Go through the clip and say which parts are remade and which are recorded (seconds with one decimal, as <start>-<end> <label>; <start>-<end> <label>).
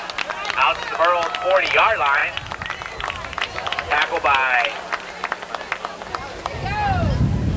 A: 0.0-7.6 recorded